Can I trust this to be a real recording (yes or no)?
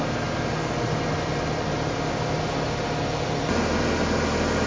yes